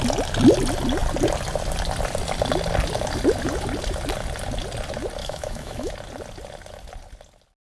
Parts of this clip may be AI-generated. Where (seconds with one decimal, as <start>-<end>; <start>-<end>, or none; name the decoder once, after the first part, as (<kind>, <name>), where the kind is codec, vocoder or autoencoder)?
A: 5.2-5.9 (autoencoder, DAC-VAE)